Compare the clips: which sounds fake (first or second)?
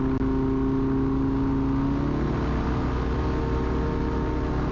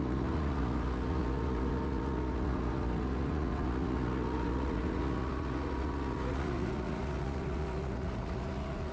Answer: second